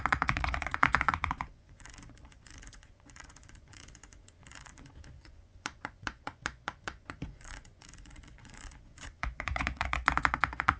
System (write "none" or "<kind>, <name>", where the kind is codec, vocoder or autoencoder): vocoder, Vocos